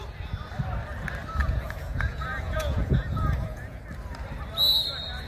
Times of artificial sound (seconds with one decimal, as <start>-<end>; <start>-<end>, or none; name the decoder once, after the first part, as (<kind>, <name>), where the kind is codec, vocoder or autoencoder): 1.4-3.8 (vocoder, Vocos)